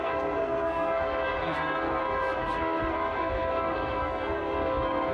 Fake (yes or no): yes